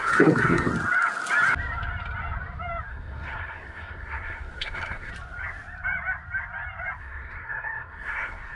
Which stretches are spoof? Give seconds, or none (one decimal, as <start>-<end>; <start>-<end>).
0.0-0.7; 2.9-5.1; 7.0-8.6